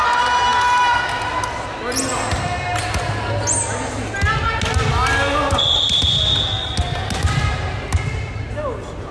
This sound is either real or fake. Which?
real